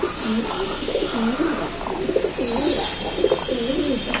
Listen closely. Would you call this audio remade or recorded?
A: recorded